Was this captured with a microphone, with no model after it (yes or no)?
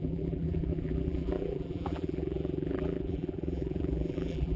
no